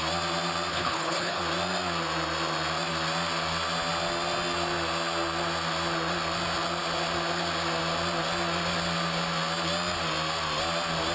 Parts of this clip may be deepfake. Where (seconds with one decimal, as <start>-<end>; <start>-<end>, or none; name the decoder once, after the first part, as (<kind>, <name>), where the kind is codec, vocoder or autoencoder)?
0.7-1.4 (codec, HILCodec)